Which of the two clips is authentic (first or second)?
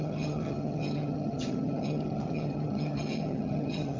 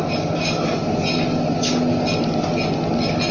second